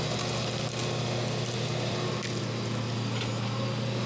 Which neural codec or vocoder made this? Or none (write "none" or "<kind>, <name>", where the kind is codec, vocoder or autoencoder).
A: none